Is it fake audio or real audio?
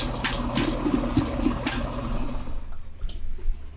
real